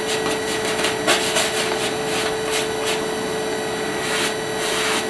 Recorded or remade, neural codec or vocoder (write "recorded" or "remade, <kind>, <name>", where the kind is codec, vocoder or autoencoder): recorded